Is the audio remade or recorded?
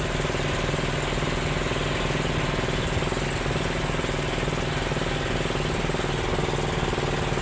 recorded